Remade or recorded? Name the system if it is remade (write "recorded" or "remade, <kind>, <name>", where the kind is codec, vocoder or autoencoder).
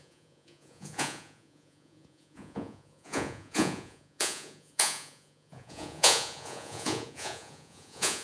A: remade, vocoder, Vocos